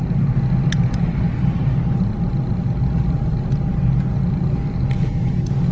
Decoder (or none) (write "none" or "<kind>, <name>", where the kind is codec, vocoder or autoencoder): none